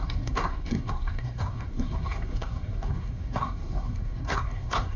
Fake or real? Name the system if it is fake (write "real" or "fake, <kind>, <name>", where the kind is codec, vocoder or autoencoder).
fake, codec, SNAC